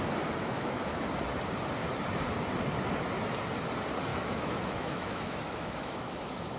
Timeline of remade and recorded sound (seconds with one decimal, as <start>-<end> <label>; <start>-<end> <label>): 0.0-0.4 recorded; 0.4-1.0 remade; 1.0-4.1 recorded; 4.1-6.6 remade